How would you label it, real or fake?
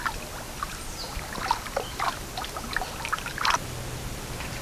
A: fake